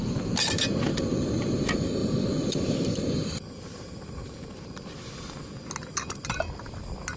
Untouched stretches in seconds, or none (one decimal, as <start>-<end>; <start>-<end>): 0.0-2.0; 5.0-5.9; 6.8-7.2